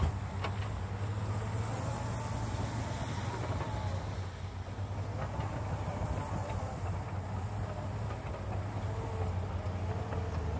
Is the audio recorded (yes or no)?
yes